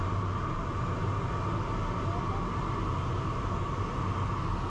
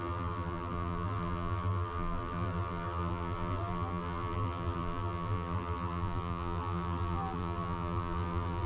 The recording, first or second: first